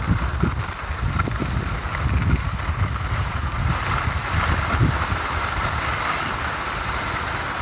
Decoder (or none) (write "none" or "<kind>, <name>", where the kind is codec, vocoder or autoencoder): none